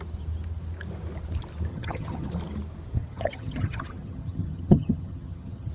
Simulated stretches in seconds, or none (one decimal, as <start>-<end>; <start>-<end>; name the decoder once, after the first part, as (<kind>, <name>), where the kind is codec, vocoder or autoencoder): 1.7-2.3 (vocoder, HiFi-GAN); 3.0-5.7